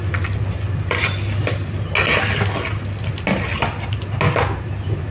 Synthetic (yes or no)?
no